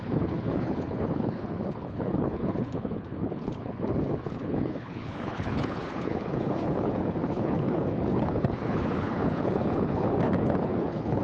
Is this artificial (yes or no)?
yes